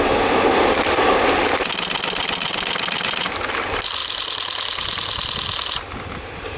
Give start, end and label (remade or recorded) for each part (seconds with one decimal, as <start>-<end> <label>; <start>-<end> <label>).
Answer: 0.0-6.6 recorded